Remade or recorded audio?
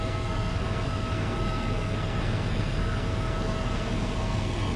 remade